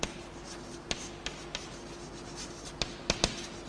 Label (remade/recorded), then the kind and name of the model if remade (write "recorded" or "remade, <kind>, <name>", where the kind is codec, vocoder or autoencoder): recorded